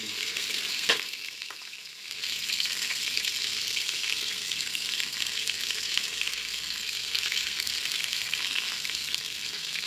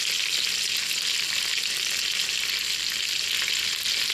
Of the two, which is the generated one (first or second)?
first